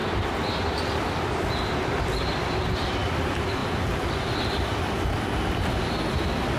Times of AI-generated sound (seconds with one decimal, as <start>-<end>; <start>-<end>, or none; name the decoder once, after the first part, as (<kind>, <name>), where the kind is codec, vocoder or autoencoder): 0.0-2.0 (vocoder, BigVGAN v2); 3.6-5.1